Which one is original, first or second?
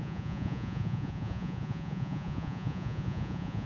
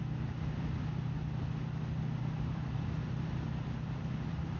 second